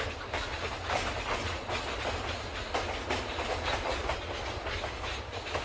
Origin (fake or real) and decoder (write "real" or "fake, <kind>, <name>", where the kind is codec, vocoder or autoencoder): real